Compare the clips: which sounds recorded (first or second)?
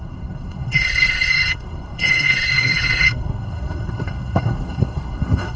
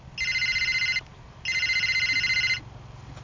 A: second